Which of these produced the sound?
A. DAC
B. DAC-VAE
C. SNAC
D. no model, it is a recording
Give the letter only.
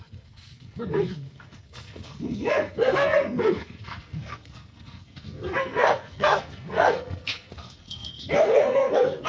C